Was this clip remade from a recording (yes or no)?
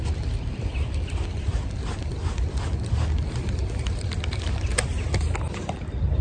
no